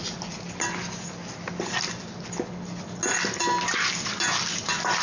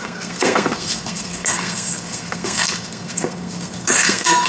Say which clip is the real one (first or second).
first